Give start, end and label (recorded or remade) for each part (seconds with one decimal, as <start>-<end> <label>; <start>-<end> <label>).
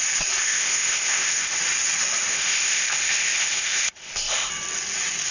0.0-0.4 recorded; 0.4-1.6 remade; 1.6-2.3 recorded; 2.3-4.5 remade; 4.5-5.3 recorded